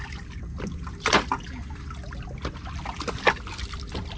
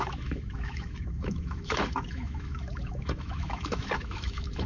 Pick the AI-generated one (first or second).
second